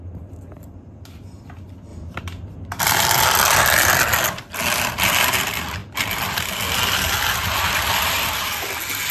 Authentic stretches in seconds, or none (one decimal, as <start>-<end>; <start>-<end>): 0.0-9.1